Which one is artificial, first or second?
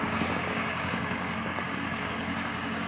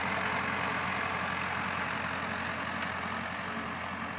first